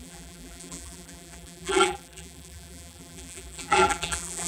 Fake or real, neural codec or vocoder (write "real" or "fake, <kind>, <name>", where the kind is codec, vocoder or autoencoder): fake, vocoder, BigVGAN v2